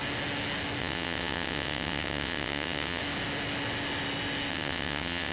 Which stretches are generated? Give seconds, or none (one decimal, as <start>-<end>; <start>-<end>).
0.8-3.0; 4.5-5.3